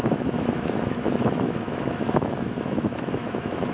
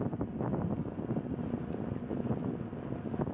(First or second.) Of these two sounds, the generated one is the first